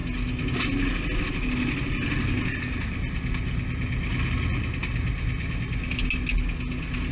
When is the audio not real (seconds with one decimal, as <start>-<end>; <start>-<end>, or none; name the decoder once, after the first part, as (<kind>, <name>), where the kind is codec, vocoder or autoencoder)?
none